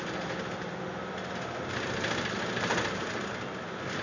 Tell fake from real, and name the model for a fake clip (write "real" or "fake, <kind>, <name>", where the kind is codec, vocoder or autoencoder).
real